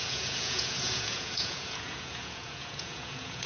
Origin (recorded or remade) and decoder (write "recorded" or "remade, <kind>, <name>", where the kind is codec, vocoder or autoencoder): remade, vocoder, Vocos